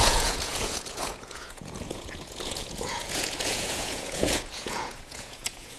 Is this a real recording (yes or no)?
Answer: no